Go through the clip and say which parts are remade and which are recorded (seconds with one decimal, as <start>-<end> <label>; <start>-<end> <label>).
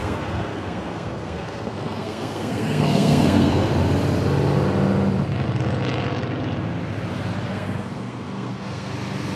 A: 0.0-3.7 remade; 3.7-7.5 recorded; 7.5-8.9 remade; 8.9-9.4 recorded